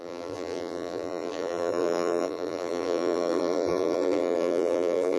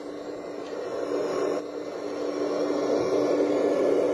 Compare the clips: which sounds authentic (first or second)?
second